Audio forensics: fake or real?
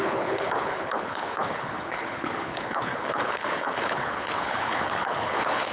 fake